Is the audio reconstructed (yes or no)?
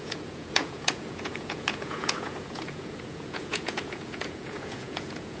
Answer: yes